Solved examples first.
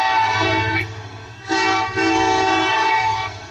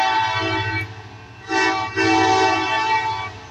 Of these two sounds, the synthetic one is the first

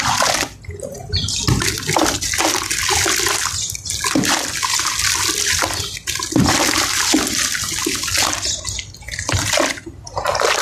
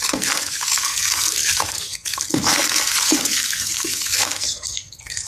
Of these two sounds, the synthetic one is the second